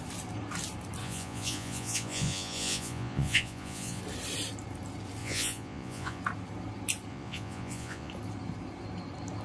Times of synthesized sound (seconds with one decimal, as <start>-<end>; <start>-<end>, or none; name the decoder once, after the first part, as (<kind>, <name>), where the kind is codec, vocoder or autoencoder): 1.0-4.0 (vocoder, Vocos); 5.2-6.2; 7.1-8.1